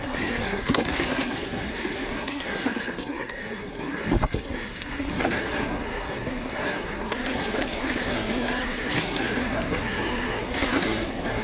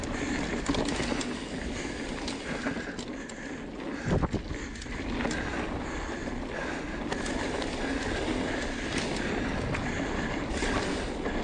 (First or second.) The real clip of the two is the second